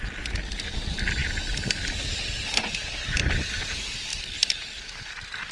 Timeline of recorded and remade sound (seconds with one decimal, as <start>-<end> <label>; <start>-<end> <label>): 0.0-5.5 recorded